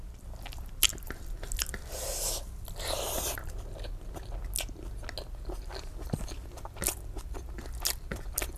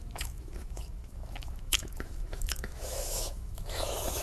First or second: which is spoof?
second